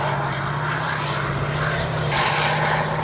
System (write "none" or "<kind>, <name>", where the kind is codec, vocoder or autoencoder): none